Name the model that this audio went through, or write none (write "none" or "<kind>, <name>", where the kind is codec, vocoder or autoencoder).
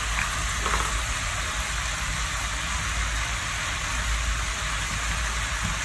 none